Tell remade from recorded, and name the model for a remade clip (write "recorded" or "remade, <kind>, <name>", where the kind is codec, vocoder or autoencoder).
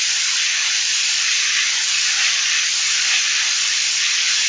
remade, vocoder, BigVGAN v2